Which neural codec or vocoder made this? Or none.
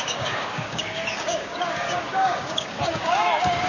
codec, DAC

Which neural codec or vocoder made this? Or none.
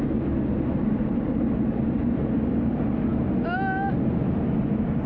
none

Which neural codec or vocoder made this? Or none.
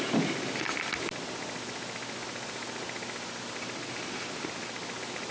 none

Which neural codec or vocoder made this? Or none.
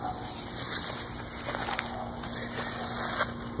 none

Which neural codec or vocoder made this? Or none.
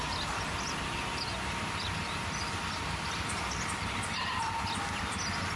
none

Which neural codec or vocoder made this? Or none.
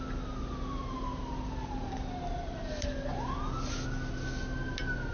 none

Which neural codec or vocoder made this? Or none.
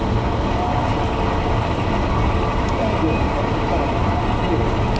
none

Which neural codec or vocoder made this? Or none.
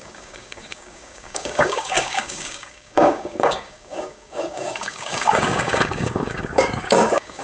codec, DAC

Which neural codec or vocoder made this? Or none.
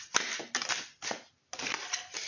none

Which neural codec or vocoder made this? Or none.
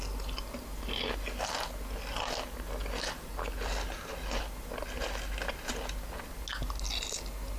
none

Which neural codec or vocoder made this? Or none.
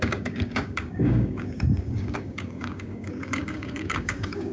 codec, DAC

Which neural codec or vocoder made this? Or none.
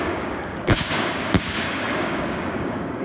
codec, DAC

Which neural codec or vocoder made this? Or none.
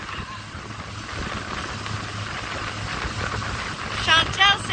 none